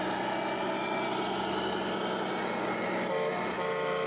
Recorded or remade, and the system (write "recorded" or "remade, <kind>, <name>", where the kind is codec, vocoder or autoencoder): recorded